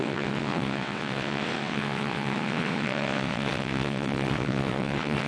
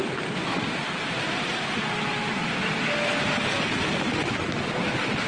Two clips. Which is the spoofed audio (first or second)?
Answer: first